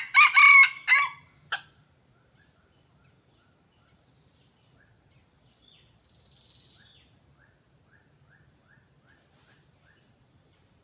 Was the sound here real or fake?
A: real